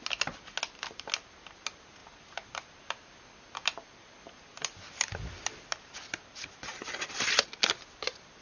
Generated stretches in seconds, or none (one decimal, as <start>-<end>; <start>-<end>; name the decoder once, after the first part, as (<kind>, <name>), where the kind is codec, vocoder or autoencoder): none